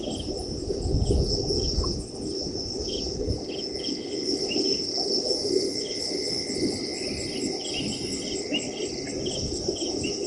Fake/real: real